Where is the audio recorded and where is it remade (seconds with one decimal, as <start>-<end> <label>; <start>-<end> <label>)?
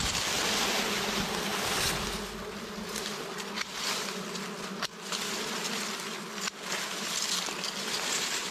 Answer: 0.0-8.5 recorded